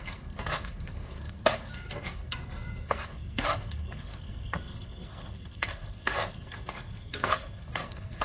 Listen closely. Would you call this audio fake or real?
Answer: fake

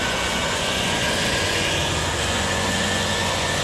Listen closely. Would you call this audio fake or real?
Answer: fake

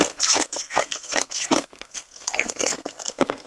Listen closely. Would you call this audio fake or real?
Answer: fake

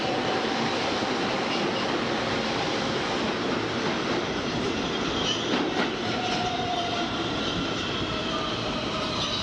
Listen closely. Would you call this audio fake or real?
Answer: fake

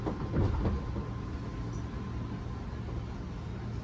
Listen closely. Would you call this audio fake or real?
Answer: real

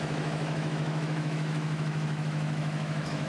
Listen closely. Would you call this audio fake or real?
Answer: fake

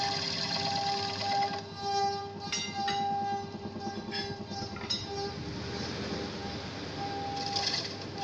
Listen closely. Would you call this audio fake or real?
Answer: real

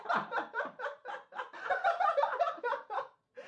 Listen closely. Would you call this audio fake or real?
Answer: fake